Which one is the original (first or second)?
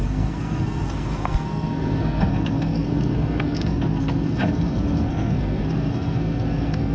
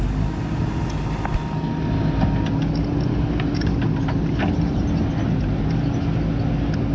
second